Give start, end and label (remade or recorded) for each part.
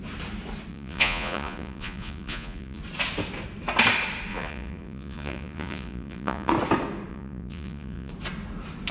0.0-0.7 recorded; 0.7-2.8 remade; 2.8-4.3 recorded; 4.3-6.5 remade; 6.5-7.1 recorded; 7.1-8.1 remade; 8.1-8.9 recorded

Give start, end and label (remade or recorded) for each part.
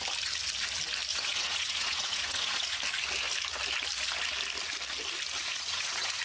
0.0-1.1 recorded; 1.1-2.8 remade; 2.8-5.4 recorded; 5.4-6.2 remade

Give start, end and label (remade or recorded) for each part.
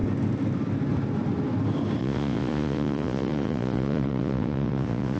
0.0-2.0 recorded; 2.0-5.2 remade